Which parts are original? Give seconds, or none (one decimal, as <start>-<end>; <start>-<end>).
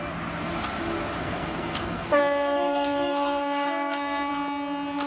0.0-1.2; 4.3-5.1